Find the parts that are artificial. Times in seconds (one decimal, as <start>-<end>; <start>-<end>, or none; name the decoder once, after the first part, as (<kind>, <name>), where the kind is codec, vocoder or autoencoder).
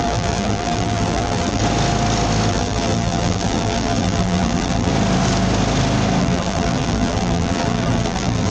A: 0.0-1.6 (vocoder, BigVGAN v2); 2.5-4.9; 6.2-8.5